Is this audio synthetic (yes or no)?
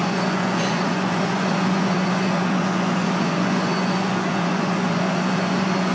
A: yes